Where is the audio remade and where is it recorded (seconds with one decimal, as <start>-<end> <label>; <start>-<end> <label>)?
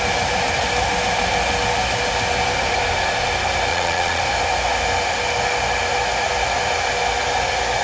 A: 0.0-3.7 recorded; 3.7-4.2 remade; 4.2-7.8 recorded